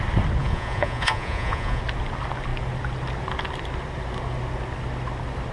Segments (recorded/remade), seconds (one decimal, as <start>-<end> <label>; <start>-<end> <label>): 0.0-0.4 recorded; 0.4-1.8 remade; 1.8-5.5 recorded